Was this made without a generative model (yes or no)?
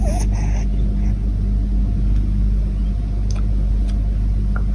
yes